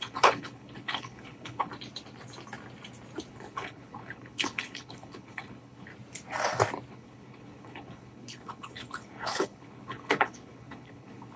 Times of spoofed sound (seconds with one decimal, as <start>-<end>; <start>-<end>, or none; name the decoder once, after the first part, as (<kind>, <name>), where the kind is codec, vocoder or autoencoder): 0.0-1.7 (codec, HILCodec); 3.3-5.9; 6.9-11.4